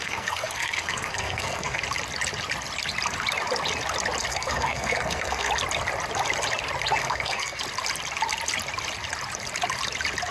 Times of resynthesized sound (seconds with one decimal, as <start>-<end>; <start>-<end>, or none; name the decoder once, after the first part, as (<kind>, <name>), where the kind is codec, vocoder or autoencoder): 0.0-1.8 (codec, SNAC); 4.3-5.5; 7.0-7.6